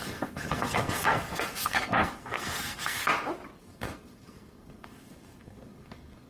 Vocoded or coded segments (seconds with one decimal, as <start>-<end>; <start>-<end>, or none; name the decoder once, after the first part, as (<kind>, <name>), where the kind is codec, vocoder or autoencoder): 0.0-3.0 (codec, SNAC); 3.6-6.3